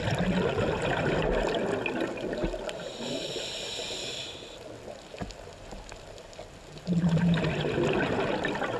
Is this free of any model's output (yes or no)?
yes